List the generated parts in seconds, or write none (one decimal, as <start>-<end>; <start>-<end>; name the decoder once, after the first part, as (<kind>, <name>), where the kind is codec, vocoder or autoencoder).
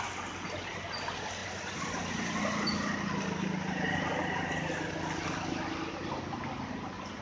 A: none